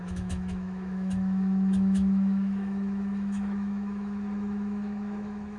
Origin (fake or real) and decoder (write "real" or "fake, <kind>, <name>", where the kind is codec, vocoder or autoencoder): fake, autoencoder, DAC-VAE